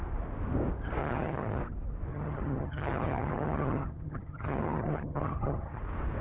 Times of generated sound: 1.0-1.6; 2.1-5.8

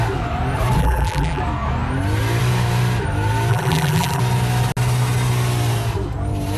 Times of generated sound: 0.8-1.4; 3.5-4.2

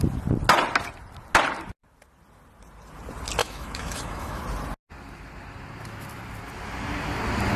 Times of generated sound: 3.4-4.4

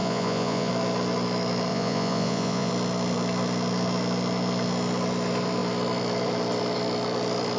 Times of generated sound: 0.0-0.7; 1.7-2.7